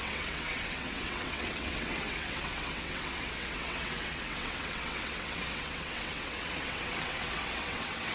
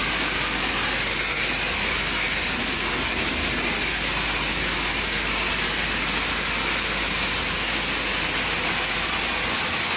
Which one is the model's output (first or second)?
first